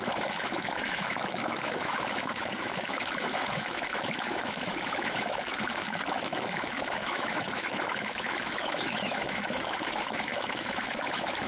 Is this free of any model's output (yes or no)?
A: no